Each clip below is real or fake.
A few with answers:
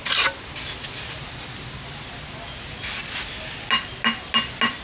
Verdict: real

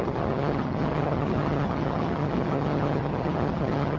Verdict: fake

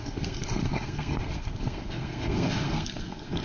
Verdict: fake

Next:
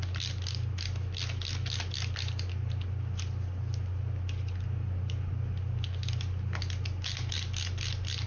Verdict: real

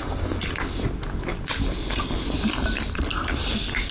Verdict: real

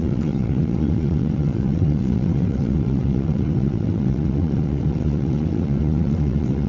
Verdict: fake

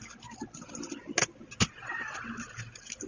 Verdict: real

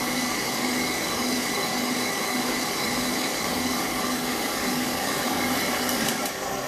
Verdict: fake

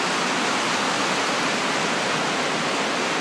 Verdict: real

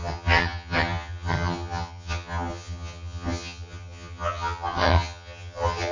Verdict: fake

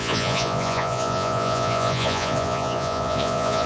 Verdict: fake